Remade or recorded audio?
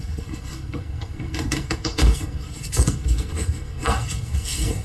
remade